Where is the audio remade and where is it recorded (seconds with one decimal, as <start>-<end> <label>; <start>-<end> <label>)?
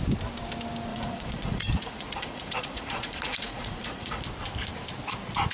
0.0-0.9 recorded; 0.9-4.2 remade; 4.2-5.5 recorded